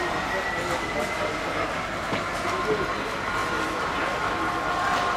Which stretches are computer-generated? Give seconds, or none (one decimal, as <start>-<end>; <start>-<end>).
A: 3.4-4.0